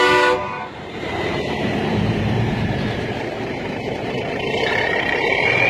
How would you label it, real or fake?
fake